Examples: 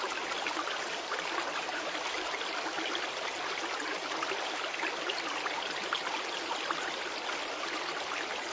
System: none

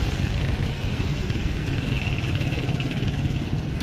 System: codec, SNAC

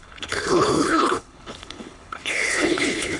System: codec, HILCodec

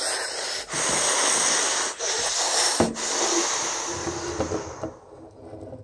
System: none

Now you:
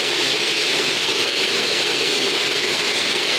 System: codec, SNAC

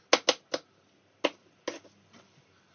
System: none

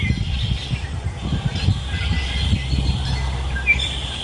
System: none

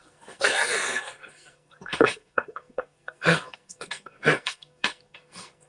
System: codec, SNAC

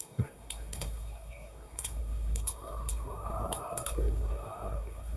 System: codec, SNAC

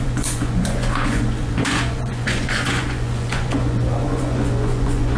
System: vocoder, Vocos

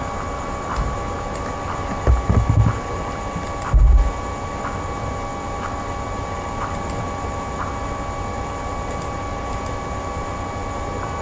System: none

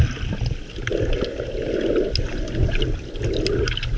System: none